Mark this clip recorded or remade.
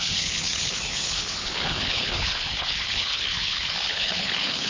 remade